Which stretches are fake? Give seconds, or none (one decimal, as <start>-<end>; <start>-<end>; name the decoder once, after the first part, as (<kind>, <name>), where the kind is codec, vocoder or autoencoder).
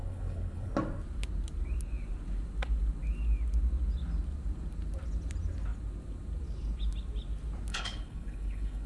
0.0-0.7 (codec, HILCodec); 7.7-8.9